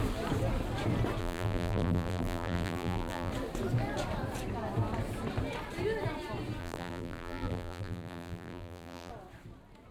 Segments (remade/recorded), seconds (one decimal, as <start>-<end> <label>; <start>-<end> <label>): 0.0-1.2 recorded; 1.2-3.3 remade; 3.3-6.6 recorded; 6.6-9.1 remade; 9.1-9.9 recorded